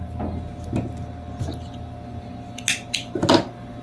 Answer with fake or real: real